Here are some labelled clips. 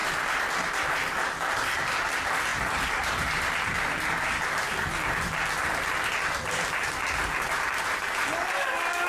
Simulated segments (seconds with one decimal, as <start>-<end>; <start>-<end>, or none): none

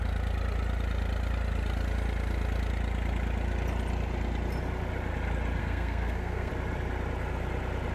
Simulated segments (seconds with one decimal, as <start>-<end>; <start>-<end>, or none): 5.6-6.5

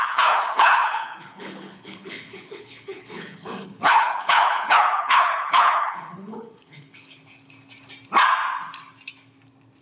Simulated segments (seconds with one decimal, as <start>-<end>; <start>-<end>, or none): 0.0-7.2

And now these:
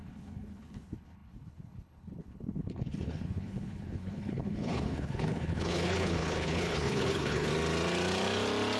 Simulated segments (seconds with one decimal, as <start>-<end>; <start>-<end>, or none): 0.0-7.5

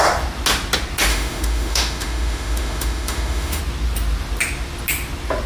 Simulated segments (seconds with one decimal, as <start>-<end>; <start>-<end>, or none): 1.1-3.6

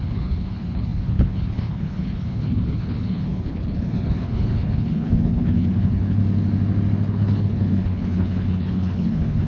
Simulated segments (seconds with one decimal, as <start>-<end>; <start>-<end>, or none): 0.0-6.2; 7.1-9.5

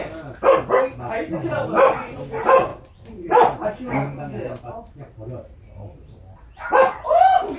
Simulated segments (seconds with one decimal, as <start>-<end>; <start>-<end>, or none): none

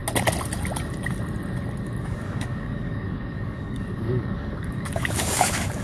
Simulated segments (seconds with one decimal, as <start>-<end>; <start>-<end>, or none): 2.0-5.8